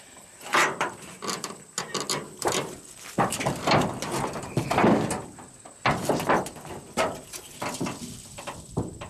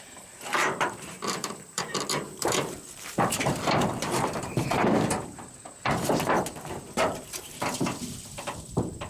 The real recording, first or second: first